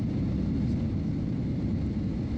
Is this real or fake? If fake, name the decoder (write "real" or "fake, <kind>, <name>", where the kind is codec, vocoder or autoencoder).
real